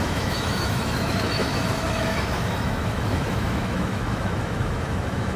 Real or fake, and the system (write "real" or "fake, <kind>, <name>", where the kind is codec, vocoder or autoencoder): fake, autoencoder, DAC-VAE